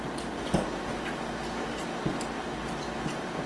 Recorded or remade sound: recorded